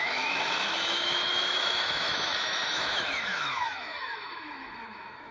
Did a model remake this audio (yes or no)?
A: yes